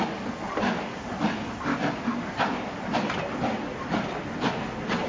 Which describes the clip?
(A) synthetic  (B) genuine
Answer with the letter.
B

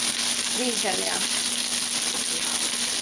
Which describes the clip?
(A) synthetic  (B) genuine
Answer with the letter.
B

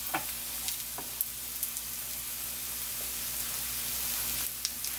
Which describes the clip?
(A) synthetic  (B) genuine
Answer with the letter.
B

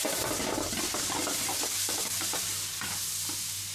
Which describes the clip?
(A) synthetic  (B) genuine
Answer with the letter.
B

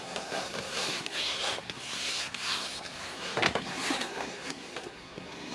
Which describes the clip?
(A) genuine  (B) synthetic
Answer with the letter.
B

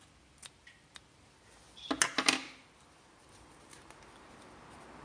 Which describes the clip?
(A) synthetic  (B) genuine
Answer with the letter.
B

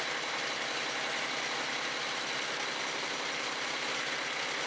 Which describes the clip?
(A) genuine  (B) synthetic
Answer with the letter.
A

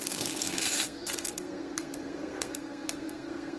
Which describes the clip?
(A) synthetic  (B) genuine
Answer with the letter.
A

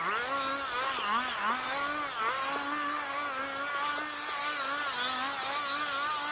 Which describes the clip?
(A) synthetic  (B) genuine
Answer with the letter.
B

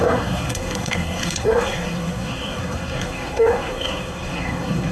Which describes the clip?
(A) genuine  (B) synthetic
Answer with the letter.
B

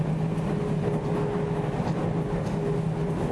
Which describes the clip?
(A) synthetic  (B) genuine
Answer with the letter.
B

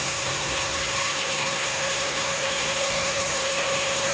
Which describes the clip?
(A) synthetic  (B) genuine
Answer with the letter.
A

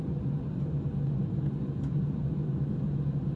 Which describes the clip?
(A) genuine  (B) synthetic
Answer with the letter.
A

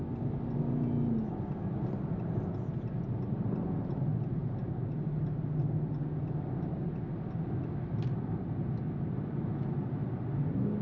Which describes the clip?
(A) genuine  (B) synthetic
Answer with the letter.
A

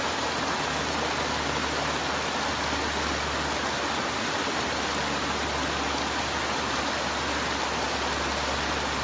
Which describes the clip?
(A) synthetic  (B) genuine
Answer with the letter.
B